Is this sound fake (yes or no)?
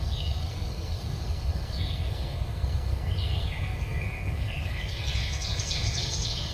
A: yes